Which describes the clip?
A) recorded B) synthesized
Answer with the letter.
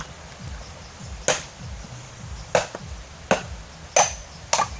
A